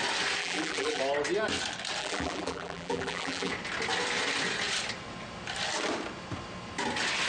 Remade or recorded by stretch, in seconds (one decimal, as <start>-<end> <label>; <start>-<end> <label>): 0.0-0.4 recorded; 0.4-1.0 remade; 1.0-2.0 recorded; 2.0-3.5 remade; 3.5-7.3 recorded